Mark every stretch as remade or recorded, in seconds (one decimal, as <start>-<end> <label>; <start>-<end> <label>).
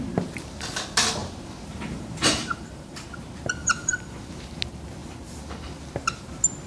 0.0-1.2 recorded; 1.2-3.2 remade; 3.2-3.6 recorded; 3.6-4.3 remade; 4.3-6.7 recorded